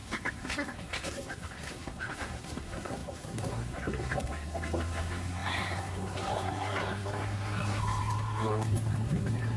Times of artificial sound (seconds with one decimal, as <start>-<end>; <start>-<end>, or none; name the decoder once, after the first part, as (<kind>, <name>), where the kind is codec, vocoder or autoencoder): 0.0-9.6 (codec, SNAC)